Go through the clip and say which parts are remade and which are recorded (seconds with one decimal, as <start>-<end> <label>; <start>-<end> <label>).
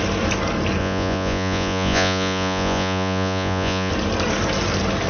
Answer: 0.0-0.8 recorded; 0.8-3.9 remade; 3.9-5.1 recorded